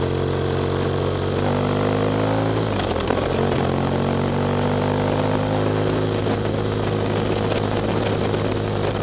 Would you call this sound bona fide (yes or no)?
yes